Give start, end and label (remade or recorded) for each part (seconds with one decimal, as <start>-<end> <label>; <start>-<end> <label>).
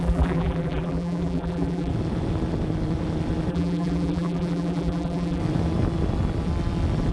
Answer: 0.0-1.9 remade; 1.9-3.5 recorded; 3.5-5.4 remade; 5.4-7.1 recorded